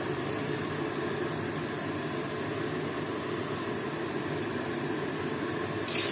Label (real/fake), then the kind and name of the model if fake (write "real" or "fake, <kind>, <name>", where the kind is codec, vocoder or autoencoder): real